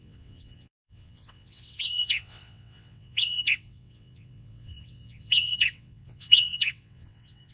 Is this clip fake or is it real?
fake